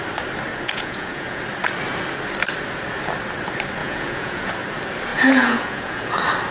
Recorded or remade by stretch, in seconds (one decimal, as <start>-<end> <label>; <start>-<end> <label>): 0.0-0.5 recorded; 0.5-1.4 remade; 1.4-3.8 recorded; 3.8-4.5 remade; 4.5-5.1 recorded; 5.1-6.1 remade; 6.1-6.5 recorded